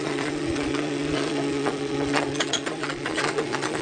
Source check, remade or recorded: remade